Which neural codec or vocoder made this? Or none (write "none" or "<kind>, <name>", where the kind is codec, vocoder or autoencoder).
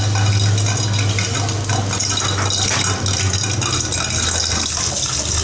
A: none